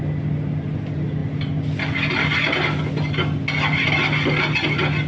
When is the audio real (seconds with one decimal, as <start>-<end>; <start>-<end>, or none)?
0.0-5.1